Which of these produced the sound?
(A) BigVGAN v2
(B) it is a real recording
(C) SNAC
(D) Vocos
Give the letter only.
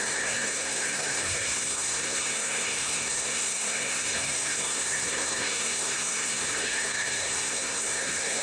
C